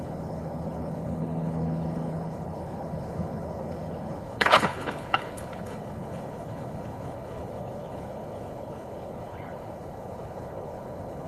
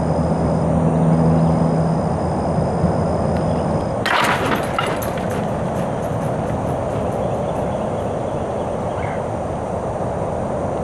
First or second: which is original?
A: second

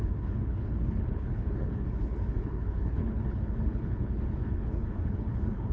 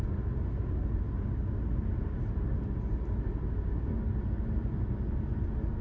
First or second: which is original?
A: second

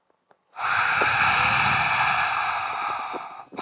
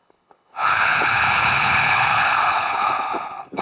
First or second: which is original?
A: first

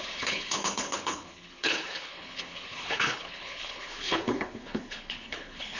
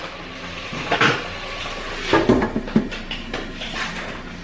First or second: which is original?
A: second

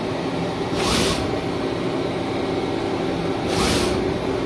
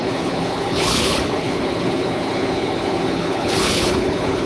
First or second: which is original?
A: first